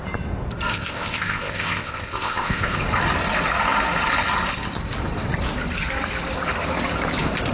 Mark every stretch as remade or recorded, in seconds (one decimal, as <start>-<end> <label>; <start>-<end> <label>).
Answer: 0.0-0.7 recorded; 0.7-2.8 remade; 2.8-7.5 recorded